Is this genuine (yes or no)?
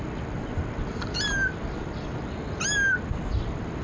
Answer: yes